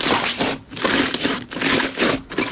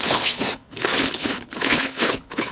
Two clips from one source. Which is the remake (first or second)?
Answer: second